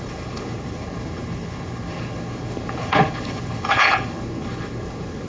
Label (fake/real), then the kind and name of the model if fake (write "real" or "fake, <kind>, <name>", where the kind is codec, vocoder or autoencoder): fake, codec, HILCodec